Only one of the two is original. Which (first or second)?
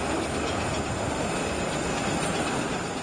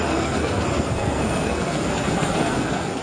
first